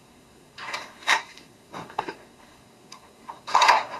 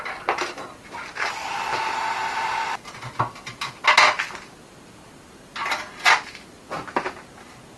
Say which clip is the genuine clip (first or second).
second